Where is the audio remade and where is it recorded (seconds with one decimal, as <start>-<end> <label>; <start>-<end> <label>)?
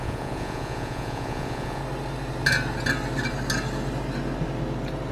0.0-1.8 remade; 1.8-5.1 recorded